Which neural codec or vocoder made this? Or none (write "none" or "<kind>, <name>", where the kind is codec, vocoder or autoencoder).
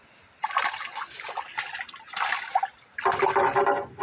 none